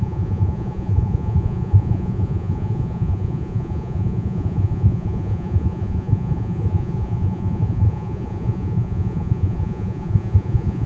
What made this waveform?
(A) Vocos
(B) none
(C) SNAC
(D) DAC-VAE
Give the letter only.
A